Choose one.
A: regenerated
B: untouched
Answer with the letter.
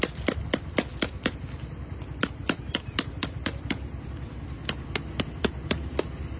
B